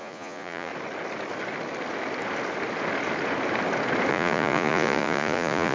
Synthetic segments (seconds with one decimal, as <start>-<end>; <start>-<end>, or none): 0.0-0.7; 4.1-5.7

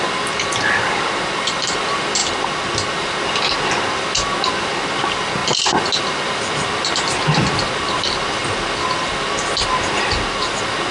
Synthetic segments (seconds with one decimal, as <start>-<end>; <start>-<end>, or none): none